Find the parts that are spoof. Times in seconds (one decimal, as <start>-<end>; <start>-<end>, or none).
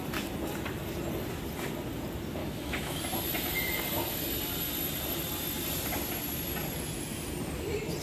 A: 2.4-3.0